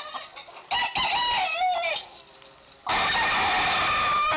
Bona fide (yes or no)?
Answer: yes